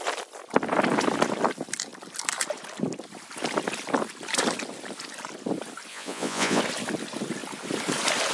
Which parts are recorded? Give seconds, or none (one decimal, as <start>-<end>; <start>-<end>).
0.0-5.9; 6.6-8.3